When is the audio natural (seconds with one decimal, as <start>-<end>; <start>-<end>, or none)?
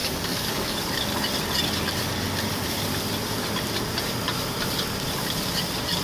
0.9-6.0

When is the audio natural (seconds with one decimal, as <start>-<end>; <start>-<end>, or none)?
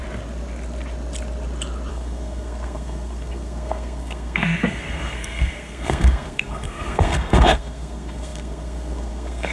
0.0-1.9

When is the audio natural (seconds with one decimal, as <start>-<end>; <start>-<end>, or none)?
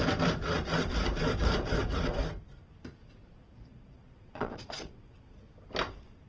0.0-3.0; 5.5-6.3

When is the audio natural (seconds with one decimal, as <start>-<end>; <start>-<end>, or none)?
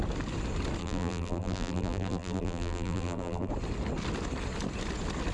0.0-0.8; 3.5-5.3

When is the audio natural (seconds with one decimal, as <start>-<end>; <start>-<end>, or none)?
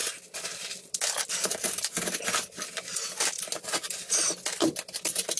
0.0-5.4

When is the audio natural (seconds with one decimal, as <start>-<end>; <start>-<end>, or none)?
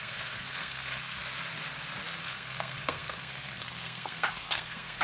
1.2-2.2